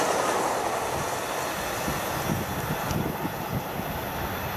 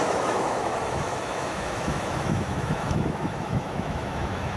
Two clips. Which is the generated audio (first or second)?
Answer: second